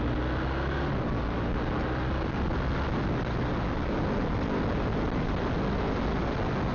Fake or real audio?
real